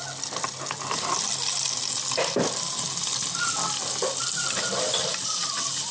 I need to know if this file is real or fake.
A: real